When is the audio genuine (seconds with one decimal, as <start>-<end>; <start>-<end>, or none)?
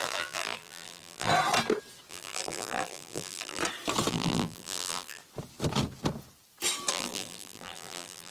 1.3-2.1; 3.6-4.1; 5.2-6.9